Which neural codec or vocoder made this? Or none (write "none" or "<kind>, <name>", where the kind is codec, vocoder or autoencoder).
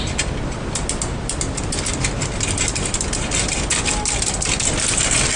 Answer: none